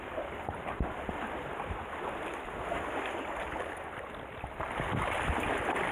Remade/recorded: recorded